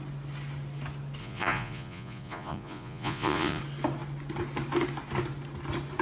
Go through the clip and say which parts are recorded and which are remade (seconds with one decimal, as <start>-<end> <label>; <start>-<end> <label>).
0.0-1.2 recorded; 1.2-3.6 remade; 3.6-6.0 recorded